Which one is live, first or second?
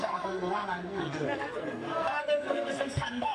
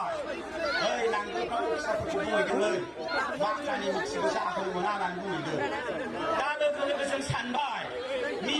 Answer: second